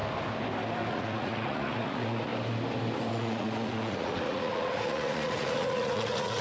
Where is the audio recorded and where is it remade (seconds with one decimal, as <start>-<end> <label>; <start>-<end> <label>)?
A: 0.0-0.9 recorded; 0.9-2.3 remade; 2.3-3.1 recorded; 3.1-6.4 remade